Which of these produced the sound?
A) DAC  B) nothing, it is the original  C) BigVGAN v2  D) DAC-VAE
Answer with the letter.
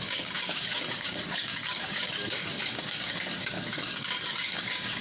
A